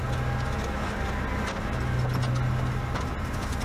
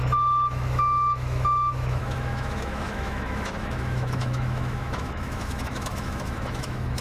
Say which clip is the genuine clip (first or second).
first